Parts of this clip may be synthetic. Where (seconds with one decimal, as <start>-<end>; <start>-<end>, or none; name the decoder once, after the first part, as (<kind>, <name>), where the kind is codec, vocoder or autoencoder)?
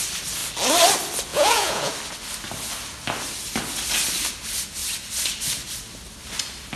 1.3-1.9 (vocoder, Vocos)